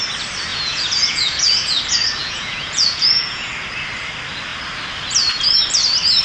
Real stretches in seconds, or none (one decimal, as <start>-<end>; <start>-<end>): 0.0-0.5; 1.8-2.2; 3.5-6.2